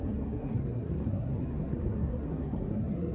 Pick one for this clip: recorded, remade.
remade